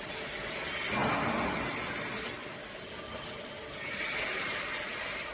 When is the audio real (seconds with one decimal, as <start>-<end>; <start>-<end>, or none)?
0.0-5.3